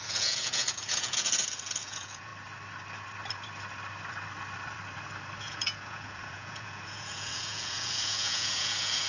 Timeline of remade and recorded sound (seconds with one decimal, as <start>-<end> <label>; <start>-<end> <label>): 0.0-2.3 remade; 2.3-5.4 recorded; 5.4-9.1 remade